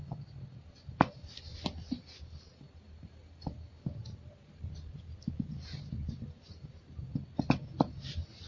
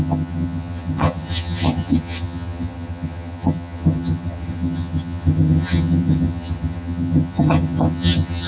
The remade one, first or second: second